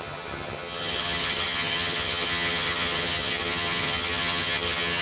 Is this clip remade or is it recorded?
remade